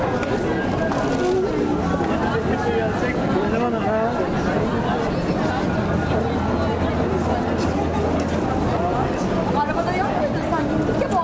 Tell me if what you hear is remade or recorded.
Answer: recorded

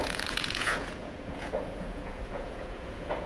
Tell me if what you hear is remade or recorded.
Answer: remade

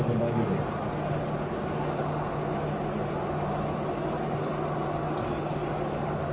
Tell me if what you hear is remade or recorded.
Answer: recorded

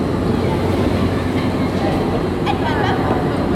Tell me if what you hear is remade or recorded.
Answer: recorded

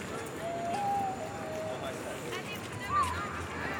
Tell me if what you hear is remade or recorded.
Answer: recorded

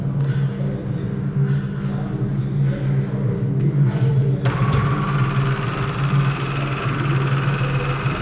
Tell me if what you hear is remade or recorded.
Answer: recorded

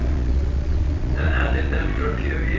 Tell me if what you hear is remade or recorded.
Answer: remade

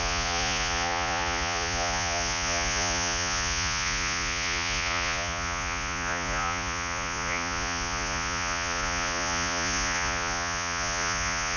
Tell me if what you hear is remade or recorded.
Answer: remade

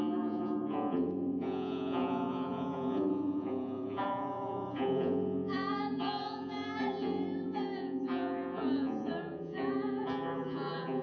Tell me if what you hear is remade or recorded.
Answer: remade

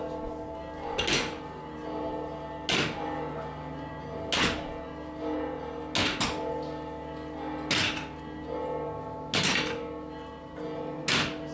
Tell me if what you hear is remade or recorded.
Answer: recorded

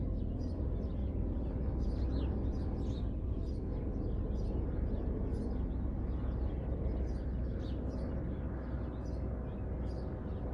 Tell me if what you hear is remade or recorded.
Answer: recorded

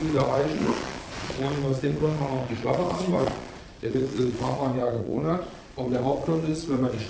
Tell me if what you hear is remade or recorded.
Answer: remade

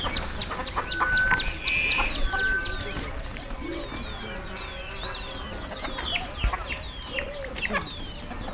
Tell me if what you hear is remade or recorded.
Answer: recorded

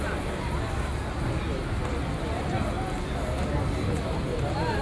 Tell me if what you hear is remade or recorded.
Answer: recorded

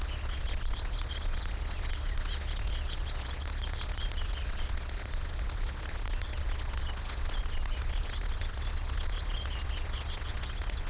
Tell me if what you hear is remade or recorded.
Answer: remade